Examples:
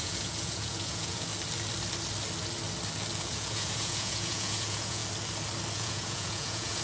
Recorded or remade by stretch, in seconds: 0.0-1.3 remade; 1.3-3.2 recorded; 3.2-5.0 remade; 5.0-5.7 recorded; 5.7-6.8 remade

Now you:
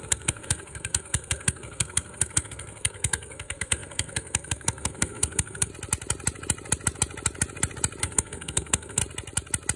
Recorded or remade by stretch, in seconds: 0.0-5.7 remade; 5.7-8.0 recorded; 8.0-9.0 remade; 9.0-9.8 recorded

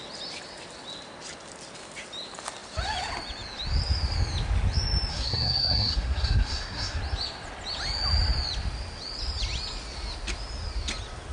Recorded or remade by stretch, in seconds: 0.0-5.1 recorded; 5.1-7.0 remade; 7.0-11.3 recorded

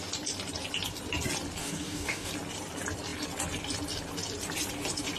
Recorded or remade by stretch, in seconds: 0.0-1.6 recorded; 1.6-2.3 remade; 2.3-5.2 recorded

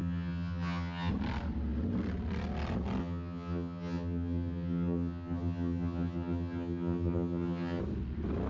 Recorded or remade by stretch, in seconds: 0.0-1.1 remade; 1.1-3.0 recorded; 3.0-7.8 remade; 7.8-8.5 recorded

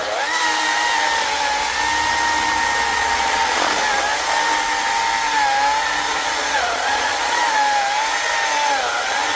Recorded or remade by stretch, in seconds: 0.0-2.9 recorded; 2.9-3.7 remade; 3.7-6.1 recorded; 6.1-7.4 remade; 7.4-9.4 recorded

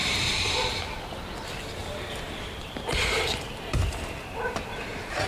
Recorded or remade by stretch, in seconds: 0.0-1.0 remade; 1.0-1.8 recorded; 1.8-5.3 remade